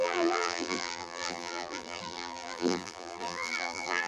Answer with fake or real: fake